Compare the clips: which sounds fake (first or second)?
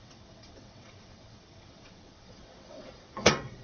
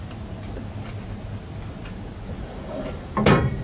first